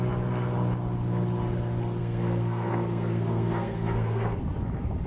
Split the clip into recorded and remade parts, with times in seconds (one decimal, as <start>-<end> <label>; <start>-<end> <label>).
0.0-2.0 recorded; 2.0-4.4 remade; 4.4-5.1 recorded